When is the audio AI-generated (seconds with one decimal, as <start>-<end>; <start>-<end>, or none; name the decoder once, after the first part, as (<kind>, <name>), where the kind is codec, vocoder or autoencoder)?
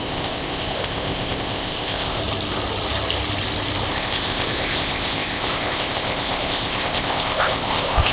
0.0-2.2 (codec, ZipCodec); 3.9-8.1